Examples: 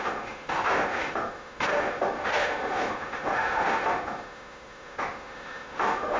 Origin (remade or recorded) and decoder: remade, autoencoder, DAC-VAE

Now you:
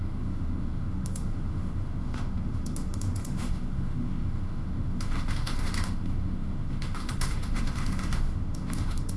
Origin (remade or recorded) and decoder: remade, autoencoder, DAC-VAE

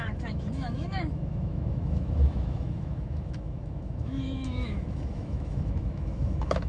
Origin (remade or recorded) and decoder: remade, autoencoder, DAC-VAE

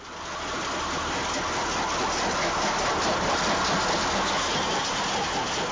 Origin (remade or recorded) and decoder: recorded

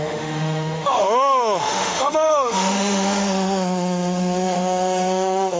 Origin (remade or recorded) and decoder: remade, autoencoder, DAC-VAE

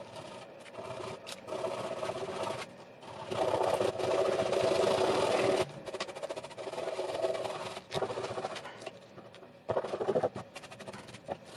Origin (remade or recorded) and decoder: recorded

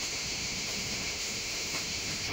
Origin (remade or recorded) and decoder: remade, autoencoder, DAC-VAE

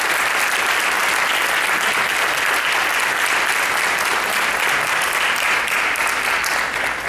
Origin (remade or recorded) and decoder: recorded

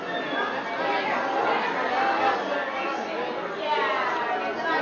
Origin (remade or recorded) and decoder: recorded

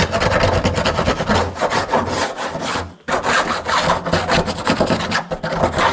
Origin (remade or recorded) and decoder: recorded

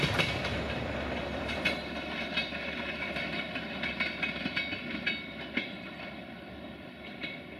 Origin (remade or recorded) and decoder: recorded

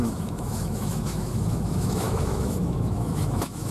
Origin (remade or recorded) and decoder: remade, autoencoder, DAC-VAE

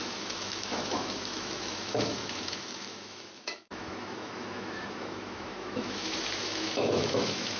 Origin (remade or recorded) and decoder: remade, autoencoder, DAC-VAE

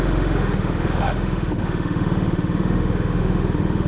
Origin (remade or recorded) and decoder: remade, autoencoder, DAC-VAE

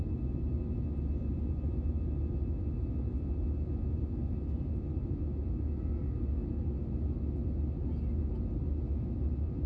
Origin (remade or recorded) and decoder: recorded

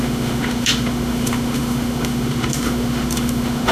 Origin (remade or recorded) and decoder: remade, autoencoder, DAC-VAE